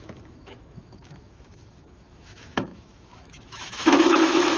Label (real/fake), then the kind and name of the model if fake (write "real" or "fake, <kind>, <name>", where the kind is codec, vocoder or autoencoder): fake, autoencoder, DAC-VAE